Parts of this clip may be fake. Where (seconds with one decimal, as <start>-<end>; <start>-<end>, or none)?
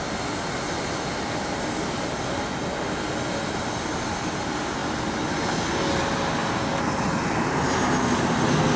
none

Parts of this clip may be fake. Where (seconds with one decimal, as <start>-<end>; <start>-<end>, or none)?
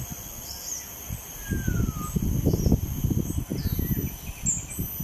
none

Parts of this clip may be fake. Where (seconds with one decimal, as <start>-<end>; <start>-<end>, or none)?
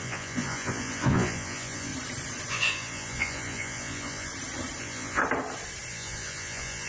0.0-1.9; 2.5-4.3; 4.8-5.2; 5.9-6.9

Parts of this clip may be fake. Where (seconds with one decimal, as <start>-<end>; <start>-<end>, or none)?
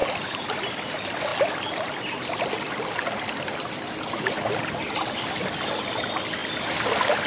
none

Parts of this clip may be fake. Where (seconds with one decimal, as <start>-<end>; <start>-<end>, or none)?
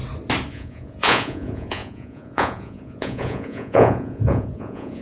0.5-5.0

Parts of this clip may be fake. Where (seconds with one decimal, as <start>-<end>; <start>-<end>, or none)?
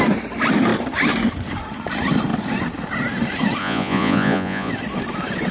3.6-4.7